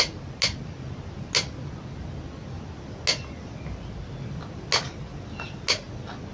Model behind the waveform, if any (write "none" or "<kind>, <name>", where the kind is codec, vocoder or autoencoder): none